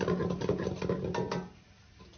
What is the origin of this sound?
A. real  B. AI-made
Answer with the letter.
A